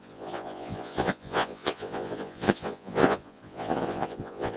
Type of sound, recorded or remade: remade